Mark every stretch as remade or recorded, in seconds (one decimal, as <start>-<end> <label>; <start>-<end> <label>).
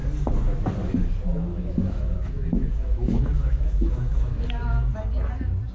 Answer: 0.0-1.5 recorded; 1.5-4.9 remade; 4.9-5.7 recorded